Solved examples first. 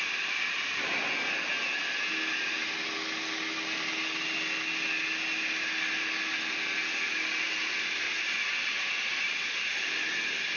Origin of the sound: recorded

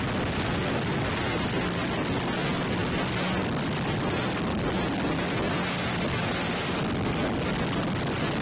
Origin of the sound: recorded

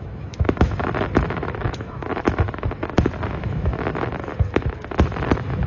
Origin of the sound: remade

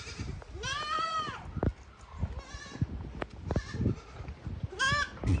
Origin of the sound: recorded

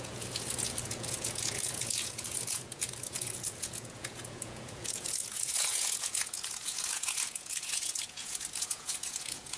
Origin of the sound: remade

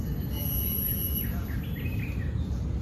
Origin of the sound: recorded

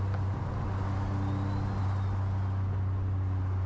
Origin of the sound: recorded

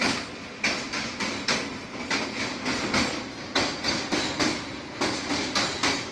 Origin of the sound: recorded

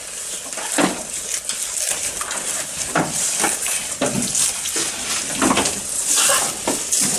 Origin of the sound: recorded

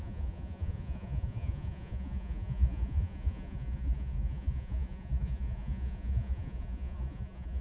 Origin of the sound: remade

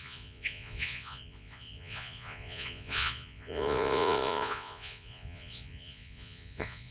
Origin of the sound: remade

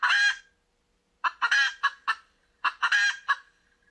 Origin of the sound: recorded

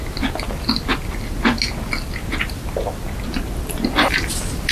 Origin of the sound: recorded